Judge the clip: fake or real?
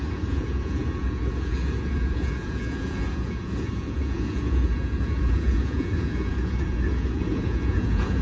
fake